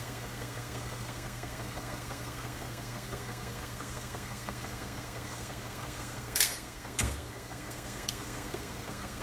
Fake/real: fake